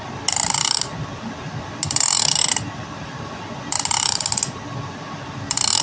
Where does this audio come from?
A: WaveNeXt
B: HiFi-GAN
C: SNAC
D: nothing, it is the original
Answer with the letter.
D